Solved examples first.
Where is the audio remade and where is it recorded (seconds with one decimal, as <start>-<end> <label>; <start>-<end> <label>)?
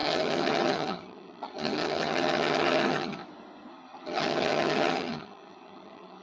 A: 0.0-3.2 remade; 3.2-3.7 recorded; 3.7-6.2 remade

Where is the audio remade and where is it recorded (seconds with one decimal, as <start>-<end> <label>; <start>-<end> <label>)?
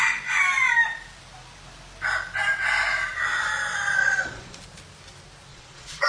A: 0.0-4.0 recorded; 4.0-4.6 remade; 4.6-5.5 recorded; 5.5-6.1 remade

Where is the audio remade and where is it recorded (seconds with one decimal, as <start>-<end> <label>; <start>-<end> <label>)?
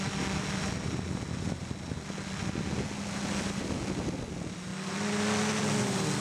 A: 0.0-6.2 recorded